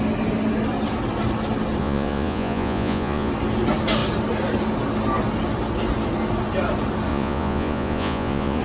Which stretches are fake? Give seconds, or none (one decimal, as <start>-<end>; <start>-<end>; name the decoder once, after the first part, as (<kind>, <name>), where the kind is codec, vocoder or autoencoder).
1.8-3.3 (vocoder, Vocos); 7.1-8.6